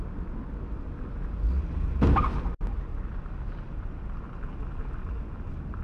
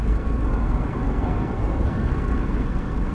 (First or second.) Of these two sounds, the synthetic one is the second